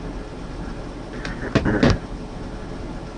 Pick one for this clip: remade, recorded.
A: recorded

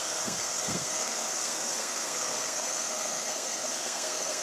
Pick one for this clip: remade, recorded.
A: remade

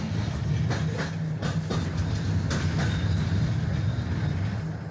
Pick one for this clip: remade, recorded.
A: recorded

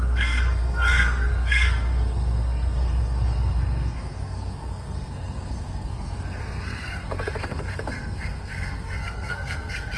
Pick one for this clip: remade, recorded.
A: remade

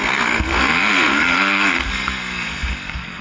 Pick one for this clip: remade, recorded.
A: remade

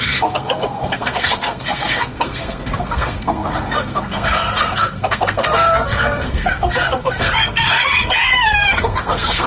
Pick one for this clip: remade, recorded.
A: remade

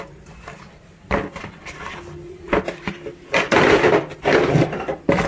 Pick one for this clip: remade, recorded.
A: recorded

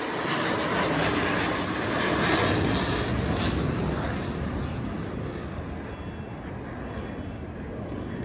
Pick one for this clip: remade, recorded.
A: recorded